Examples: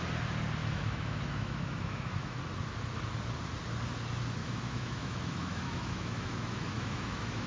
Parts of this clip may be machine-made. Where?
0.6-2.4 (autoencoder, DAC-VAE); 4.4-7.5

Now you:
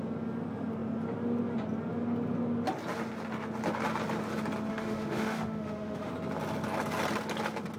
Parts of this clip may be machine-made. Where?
4.7-6.1 (autoencoder, DAC-VAE)

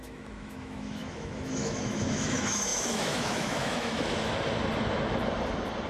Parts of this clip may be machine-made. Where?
0.0-4.3 (autoencoder, DAC-VAE)

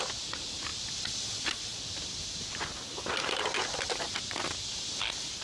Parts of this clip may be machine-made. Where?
none

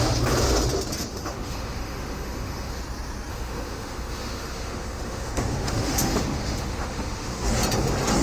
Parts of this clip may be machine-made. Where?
1.1-2.8 (autoencoder, DAC-VAE); 3.3-7.5

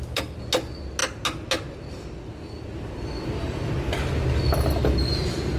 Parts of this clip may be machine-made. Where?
none

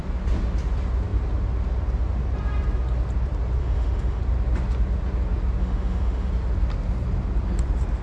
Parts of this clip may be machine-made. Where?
3.6-4.2 (autoencoder, DAC-VAE); 5.6-6.3

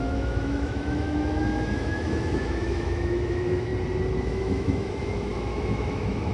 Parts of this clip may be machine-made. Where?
0.0-3.7 (autoencoder, DAC-VAE); 4.4-6.3